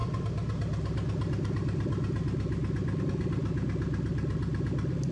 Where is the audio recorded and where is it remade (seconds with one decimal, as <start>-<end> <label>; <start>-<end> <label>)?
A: 0.0-5.1 recorded